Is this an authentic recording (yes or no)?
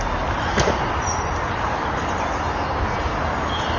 yes